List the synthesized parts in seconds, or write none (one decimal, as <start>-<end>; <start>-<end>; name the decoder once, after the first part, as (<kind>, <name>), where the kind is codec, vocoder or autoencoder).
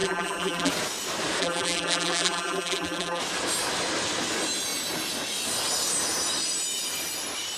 0.0-0.7 (vocoder, BigVGAN v2); 1.4-3.2